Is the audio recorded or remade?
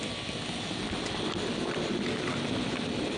recorded